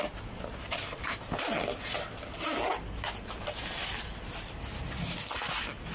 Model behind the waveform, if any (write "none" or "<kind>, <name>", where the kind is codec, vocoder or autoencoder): none